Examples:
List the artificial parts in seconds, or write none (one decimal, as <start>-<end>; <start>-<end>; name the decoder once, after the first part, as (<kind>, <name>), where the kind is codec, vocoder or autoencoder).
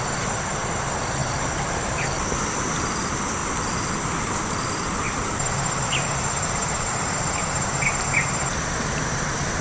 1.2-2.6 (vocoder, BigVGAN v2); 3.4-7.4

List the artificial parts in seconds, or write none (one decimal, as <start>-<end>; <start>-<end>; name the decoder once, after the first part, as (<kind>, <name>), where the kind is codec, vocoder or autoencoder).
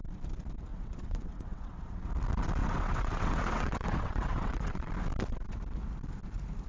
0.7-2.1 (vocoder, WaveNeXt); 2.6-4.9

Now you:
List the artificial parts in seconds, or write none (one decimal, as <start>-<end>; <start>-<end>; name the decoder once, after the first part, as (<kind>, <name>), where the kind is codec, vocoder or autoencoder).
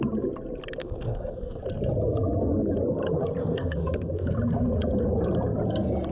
0.8-1.6 (codec, SNAC); 3.4-4.3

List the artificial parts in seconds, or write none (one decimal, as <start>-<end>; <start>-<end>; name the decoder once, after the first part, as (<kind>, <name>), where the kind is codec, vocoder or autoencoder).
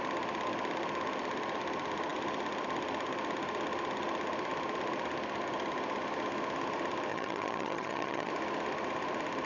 7.1-8.3 (vocoder, HiFi-GAN)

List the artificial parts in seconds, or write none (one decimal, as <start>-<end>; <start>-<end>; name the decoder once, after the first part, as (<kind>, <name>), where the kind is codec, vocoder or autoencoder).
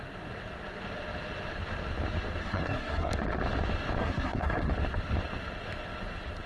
2.4-3.1 (codec, SNAC); 4.0-4.7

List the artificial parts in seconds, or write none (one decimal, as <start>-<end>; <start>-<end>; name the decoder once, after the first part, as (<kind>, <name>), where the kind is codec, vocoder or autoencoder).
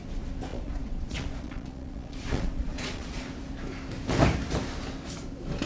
0.5-3.3 (vocoder, Vocos)